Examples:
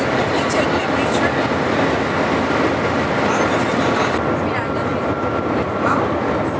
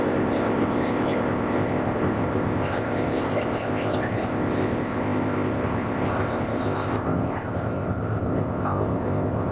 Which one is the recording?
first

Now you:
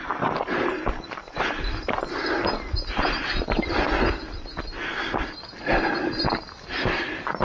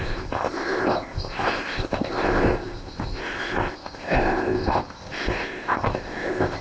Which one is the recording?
first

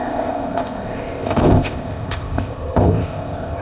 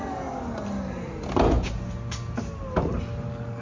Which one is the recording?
second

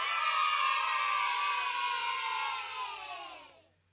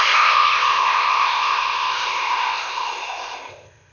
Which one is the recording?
first